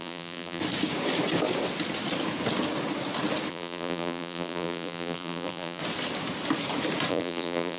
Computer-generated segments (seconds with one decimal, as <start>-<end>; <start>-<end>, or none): 0.0-0.6; 3.5-5.8; 7.1-7.8